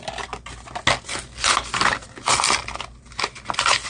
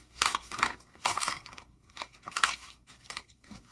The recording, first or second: first